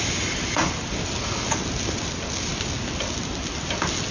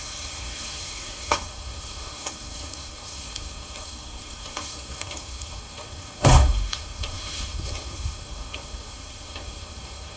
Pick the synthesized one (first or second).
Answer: second